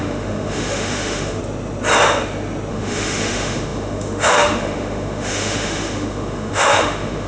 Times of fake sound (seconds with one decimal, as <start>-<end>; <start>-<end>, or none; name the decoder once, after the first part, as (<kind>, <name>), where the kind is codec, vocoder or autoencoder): 0.0-1.4 (autoencoder, DAC-VAE); 2.7-7.3